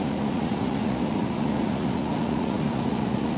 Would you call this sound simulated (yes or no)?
yes